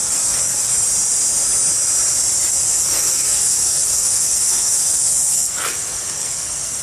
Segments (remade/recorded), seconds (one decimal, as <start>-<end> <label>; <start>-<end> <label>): 0.0-0.7 remade; 0.7-2.5 recorded; 2.5-6.8 remade